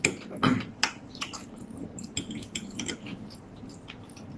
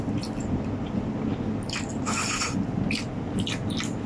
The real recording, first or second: second